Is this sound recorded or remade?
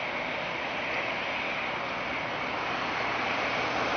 recorded